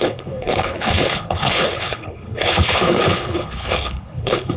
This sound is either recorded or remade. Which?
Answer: remade